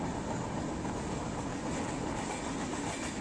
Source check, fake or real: real